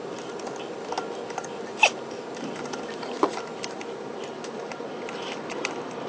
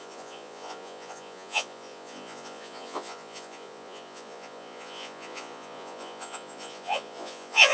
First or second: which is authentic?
first